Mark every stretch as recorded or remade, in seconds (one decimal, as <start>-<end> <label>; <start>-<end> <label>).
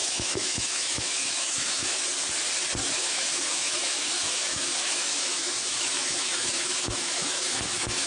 0.0-2.0 remade; 2.0-2.8 recorded; 2.8-8.1 remade